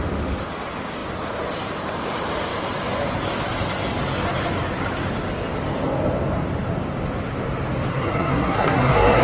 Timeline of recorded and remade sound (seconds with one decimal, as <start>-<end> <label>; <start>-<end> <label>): 0.0-7.9 recorded; 7.9-9.2 remade